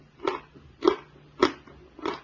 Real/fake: real